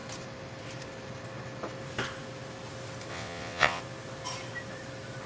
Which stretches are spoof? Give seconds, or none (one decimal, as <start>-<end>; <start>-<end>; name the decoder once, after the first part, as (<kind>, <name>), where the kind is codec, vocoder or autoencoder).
3.1-3.8 (vocoder, WaveNeXt)

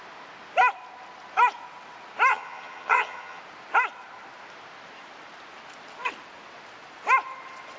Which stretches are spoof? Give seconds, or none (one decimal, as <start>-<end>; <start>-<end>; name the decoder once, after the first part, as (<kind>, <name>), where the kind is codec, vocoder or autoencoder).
2.3-3.4 (vocoder, HiFi-GAN)